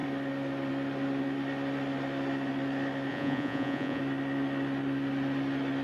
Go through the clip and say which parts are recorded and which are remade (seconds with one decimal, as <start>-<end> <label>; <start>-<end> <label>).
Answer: 0.0-3.1 recorded; 3.1-4.0 remade; 4.0-5.8 recorded